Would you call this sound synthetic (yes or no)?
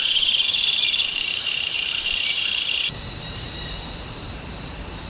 yes